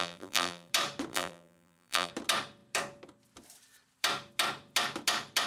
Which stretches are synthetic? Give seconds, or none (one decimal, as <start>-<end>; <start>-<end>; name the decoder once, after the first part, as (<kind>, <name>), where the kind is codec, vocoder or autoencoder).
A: 0.0-0.7 (vocoder, BigVGAN v2); 1.1-2.1